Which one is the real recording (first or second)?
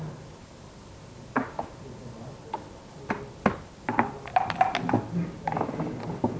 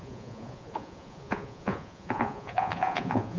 first